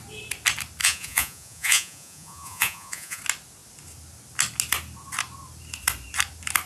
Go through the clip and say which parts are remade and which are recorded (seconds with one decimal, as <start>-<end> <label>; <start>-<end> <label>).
0.0-0.8 recorded; 0.8-3.2 remade; 3.2-6.7 recorded